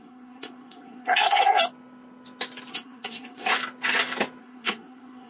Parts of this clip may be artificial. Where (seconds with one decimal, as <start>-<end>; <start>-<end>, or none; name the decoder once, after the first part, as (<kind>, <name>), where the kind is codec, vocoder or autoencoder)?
0.0-1.6 (codec, SNAC); 2.7-3.5; 4.4-5.3